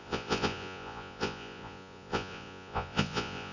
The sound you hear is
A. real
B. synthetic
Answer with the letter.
B